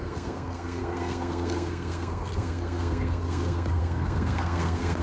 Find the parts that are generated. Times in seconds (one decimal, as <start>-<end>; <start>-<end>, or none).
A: 0.0-5.0